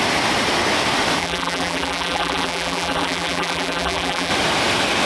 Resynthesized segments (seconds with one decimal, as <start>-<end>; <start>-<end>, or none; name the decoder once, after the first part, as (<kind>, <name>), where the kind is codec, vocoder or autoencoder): 1.2-4.3 (vocoder, BigVGAN v2)